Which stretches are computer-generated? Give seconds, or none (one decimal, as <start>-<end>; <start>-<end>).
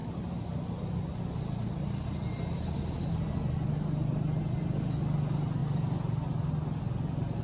none